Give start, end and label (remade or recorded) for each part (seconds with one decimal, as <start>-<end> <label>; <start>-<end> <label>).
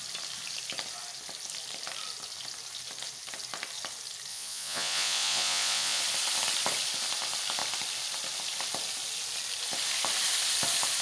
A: 0.0-4.3 recorded; 4.3-6.0 remade; 6.0-11.0 recorded